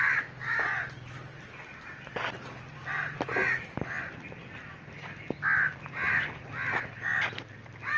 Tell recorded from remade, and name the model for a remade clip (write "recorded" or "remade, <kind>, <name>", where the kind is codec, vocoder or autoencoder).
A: recorded